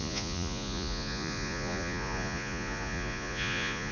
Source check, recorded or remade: remade